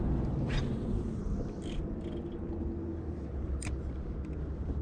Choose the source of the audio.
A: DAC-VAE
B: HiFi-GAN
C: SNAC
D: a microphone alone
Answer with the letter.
D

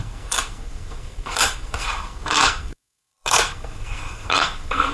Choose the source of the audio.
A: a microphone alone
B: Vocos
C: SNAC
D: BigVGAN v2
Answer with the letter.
C